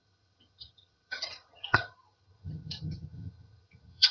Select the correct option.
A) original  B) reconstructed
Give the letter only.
B